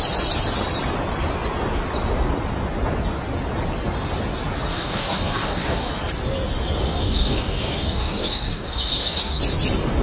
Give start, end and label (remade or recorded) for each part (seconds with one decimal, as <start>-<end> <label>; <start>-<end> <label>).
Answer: 0.0-4.7 recorded; 4.7-5.9 remade; 5.9-6.9 recorded; 6.9-9.4 remade; 9.4-10.0 recorded